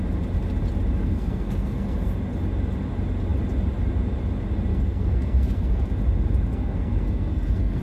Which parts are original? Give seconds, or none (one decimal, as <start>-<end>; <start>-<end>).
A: 0.0-1.0; 2.1-4.7; 5.9-6.5